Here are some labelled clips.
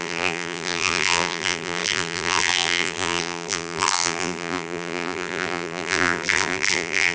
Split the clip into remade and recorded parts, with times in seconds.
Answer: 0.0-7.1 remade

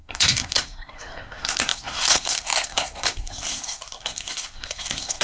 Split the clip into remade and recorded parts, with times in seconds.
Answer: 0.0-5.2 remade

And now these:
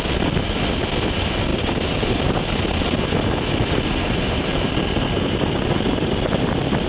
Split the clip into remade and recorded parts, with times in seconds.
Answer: 0.0-6.9 recorded

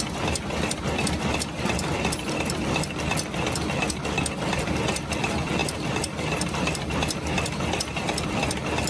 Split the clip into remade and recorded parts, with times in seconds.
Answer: 0.0-8.9 recorded

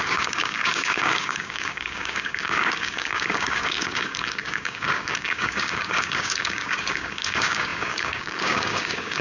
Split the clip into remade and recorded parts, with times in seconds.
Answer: 0.0-9.2 remade